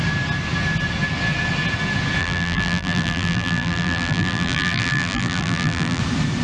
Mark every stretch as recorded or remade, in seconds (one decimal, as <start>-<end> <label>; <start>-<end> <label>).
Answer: 0.0-2.2 recorded; 2.2-6.0 remade; 6.0-6.4 recorded